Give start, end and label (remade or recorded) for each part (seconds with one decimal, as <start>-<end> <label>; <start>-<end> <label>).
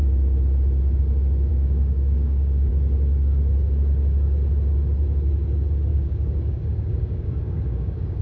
0.0-1.5 recorded; 1.5-2.7 remade; 2.7-5.9 recorded; 5.9-8.2 remade